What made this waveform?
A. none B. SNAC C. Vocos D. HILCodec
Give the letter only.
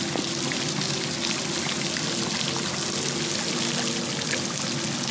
A